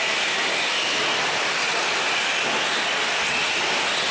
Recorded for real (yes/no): yes